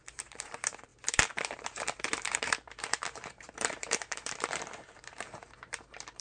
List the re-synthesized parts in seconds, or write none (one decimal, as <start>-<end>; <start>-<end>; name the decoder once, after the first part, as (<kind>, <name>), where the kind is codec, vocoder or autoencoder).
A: 0.0-6.2 (vocoder, BigVGAN v2)